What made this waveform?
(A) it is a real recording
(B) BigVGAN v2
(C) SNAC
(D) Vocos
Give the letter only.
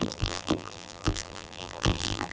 B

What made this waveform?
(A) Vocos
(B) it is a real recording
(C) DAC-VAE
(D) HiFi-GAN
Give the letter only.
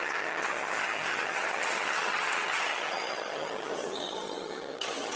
D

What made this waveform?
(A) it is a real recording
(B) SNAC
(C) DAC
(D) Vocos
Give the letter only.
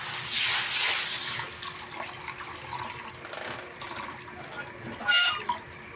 A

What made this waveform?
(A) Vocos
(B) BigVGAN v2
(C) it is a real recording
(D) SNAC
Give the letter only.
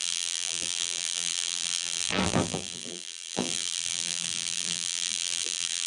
B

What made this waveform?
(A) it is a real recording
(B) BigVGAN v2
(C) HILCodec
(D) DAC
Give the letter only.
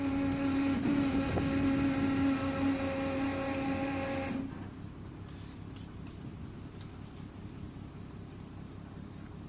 A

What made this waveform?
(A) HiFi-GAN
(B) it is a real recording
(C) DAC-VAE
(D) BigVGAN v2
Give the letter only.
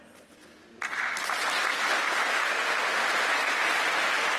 B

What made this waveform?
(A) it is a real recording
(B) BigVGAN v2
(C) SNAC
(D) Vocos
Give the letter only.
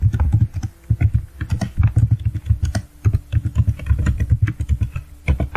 A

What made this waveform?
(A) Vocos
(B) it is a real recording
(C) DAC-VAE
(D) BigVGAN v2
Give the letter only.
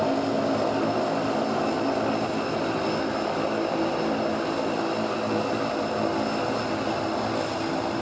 B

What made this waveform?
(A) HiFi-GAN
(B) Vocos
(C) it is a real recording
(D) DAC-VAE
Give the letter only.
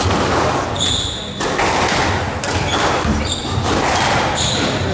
C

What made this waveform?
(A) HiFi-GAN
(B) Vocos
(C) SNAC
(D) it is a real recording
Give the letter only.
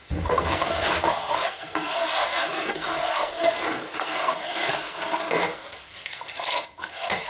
C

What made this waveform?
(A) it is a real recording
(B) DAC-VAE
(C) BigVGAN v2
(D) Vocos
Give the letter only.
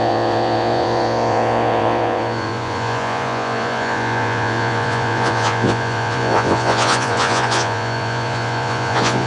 D